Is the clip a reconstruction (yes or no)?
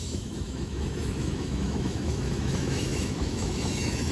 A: yes